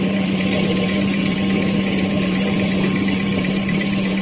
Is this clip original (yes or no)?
no